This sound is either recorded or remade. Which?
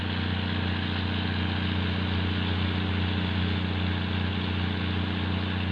recorded